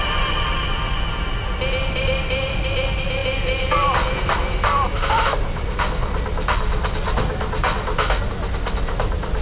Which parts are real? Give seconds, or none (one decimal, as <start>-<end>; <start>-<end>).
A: 0.0-9.4